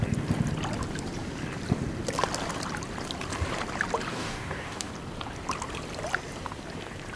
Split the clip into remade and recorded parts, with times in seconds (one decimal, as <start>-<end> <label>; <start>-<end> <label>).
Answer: 0.0-4.1 recorded; 4.1-4.9 remade; 4.9-7.2 recorded